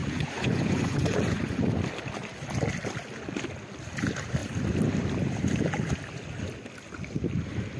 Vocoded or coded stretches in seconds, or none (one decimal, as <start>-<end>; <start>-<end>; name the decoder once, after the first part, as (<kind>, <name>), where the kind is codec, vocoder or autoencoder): 0.0-1.6 (vocoder, Vocos)

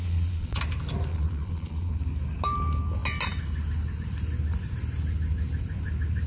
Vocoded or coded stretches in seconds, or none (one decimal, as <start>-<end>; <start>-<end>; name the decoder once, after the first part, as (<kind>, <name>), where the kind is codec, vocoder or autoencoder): 0.0-0.6 (vocoder, Vocos); 1.1-1.9